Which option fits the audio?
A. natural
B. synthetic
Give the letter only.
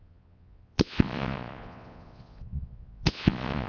B